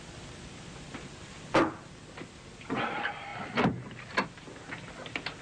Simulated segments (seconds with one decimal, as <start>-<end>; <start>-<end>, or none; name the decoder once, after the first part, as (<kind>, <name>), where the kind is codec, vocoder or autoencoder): 0.0-3.3 (vocoder, BigVGAN v2); 4.7-5.4